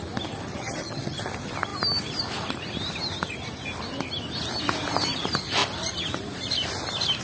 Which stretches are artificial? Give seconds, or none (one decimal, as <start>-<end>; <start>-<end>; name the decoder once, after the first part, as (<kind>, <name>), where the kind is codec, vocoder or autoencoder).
0.5-1.2 (vocoder, HiFi-GAN)